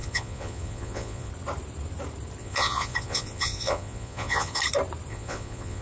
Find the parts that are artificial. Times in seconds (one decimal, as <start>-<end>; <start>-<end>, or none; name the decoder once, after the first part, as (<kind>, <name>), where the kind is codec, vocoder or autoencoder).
0.0-1.3 (vocoder, Vocos); 2.4-4.6; 5.1-5.8